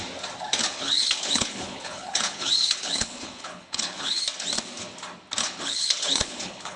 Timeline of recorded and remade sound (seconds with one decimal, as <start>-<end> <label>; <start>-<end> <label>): 0.0-0.6 recorded; 0.6-4.2 remade; 4.2-5.4 recorded; 5.4-6.8 remade